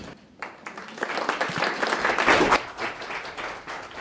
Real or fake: real